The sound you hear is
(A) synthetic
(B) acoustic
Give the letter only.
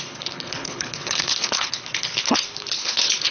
A